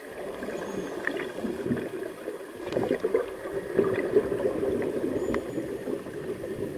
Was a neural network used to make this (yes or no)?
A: no